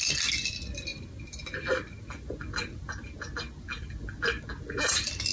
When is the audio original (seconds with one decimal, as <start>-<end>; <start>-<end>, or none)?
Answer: 0.0-5.3